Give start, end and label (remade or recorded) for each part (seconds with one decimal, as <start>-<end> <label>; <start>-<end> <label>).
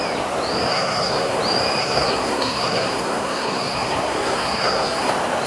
0.0-0.7 recorded; 0.7-1.4 remade; 1.4-1.8 recorded; 1.8-5.1 remade; 5.1-5.5 recorded